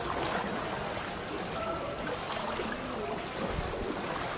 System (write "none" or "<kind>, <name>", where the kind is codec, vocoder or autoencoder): none